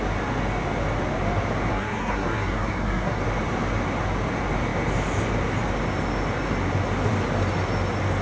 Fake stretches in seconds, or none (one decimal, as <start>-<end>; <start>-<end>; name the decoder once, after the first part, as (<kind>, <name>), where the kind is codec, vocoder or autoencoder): 1.7-3.2 (codec, SNAC)